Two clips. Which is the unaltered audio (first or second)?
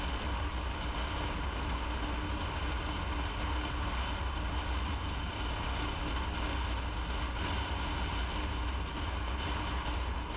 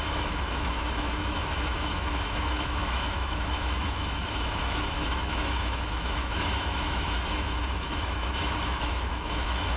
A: first